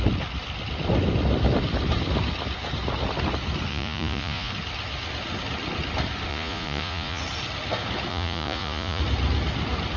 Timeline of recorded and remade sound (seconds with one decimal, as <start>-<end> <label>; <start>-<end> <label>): 0.0-3.7 recorded; 3.7-4.5 remade; 4.5-6.3 recorded; 6.3-7.2 remade; 7.2-8.1 recorded; 8.1-9.0 remade; 9.0-10.0 recorded